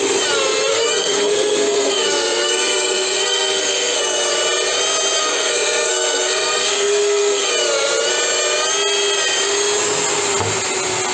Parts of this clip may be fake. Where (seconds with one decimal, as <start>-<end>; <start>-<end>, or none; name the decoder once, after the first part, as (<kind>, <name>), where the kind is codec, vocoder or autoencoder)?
0.7-4.3 (codec, SNAC); 5.2-7.5